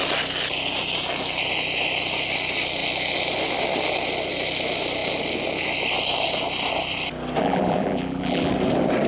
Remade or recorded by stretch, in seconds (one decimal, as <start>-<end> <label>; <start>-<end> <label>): 0.0-7.4 recorded; 7.4-8.5 remade; 8.5-9.1 recorded